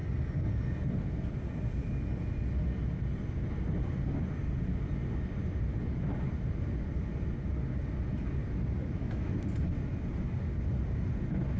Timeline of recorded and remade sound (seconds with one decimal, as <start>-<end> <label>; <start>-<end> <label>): 0.0-8.8 recorded; 8.8-9.3 remade; 9.3-11.6 recorded